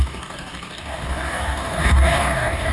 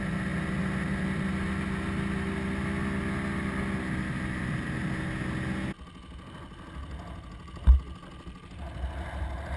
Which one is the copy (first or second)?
first